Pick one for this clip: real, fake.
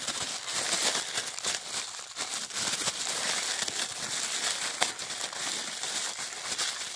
real